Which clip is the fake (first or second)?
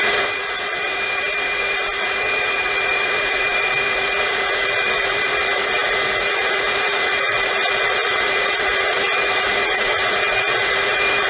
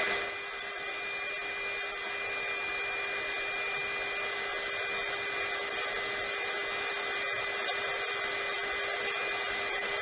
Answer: first